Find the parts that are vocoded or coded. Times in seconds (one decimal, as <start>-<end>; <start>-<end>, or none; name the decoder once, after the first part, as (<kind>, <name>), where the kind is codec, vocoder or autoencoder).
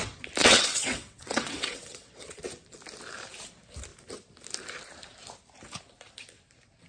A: 0.4-2.4 (vocoder, WaveNeXt)